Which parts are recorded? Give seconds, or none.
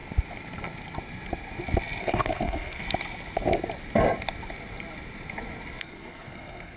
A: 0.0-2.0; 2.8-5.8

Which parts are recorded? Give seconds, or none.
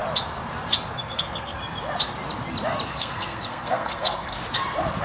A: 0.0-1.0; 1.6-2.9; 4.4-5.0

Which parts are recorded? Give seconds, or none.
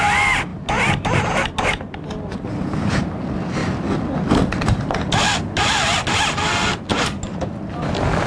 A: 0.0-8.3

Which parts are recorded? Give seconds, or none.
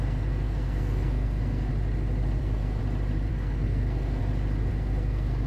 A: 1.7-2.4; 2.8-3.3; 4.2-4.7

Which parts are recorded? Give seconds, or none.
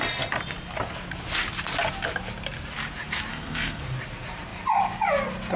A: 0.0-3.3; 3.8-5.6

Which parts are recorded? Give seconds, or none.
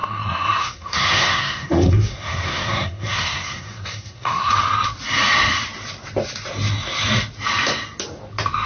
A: 4.5-8.7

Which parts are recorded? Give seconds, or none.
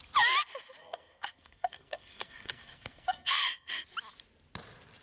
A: 0.0-0.8; 3.7-5.0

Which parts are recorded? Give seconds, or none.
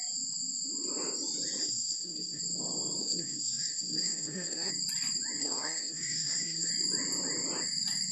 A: 0.0-1.6; 2.4-3.0; 4.7-5.4; 6.7-8.1